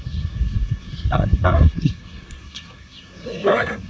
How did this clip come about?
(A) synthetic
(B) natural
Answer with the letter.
A